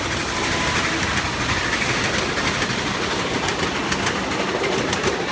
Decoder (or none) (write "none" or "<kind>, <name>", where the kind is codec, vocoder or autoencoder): none